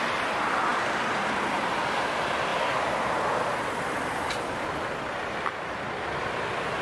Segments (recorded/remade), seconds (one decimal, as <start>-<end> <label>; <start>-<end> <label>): 0.0-0.7 remade; 0.7-1.5 recorded; 1.5-2.5 remade; 2.5-6.8 recorded